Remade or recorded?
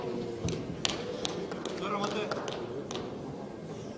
recorded